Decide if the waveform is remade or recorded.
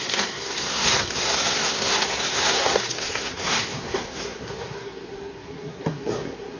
remade